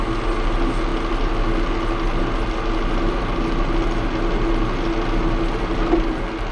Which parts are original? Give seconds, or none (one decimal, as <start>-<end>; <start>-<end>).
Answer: 0.0-6.5